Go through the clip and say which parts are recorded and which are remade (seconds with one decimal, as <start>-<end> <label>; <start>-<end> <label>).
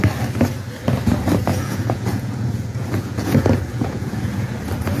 0.0-1.5 recorded; 1.5-4.5 remade; 4.5-5.0 recorded